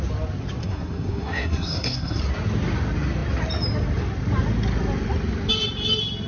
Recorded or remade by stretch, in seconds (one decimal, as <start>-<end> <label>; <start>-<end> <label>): 0.0-0.6 recorded; 0.6-2.2 remade; 2.2-6.3 recorded